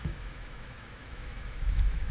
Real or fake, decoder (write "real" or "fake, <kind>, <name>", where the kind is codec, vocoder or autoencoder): fake, autoencoder, DAC-VAE